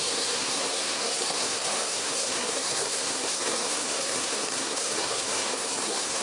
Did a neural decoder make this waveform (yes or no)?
yes